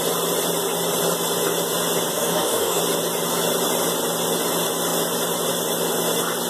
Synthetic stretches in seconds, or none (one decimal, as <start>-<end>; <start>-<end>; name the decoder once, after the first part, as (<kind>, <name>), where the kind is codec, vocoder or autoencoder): 2.1-2.8 (codec, DAC)